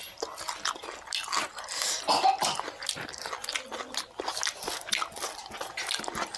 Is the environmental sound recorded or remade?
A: recorded